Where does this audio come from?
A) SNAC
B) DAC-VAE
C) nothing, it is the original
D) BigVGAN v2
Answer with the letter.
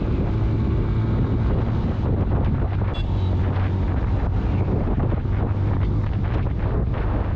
C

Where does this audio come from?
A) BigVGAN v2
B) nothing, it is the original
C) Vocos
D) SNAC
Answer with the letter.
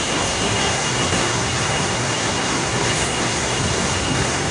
D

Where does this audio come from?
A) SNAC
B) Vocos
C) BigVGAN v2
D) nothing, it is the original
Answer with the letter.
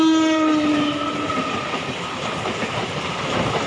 D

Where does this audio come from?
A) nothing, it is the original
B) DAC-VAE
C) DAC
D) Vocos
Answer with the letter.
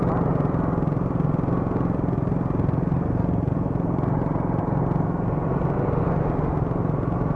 A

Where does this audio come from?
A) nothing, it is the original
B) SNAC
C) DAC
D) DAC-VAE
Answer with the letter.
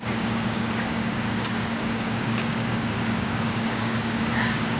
C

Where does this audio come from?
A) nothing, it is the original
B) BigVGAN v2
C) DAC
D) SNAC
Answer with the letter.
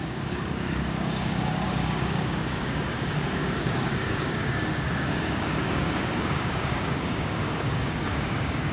C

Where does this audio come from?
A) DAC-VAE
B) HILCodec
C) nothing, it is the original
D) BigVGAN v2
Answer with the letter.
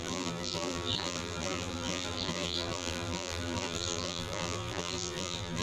D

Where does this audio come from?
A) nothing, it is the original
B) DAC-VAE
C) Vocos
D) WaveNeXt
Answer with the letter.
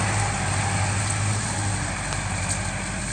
A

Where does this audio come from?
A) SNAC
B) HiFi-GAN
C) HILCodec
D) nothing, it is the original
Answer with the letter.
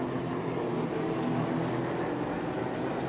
D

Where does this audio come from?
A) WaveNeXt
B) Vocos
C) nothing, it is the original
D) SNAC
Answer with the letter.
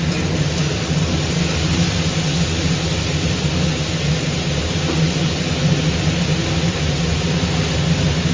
C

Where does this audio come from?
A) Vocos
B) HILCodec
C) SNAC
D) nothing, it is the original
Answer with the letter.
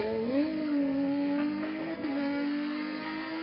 C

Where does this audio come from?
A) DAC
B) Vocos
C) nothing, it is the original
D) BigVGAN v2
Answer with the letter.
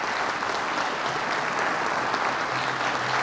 C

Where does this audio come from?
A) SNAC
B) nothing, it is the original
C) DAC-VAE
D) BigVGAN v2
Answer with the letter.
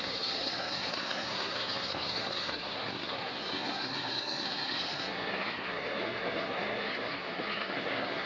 A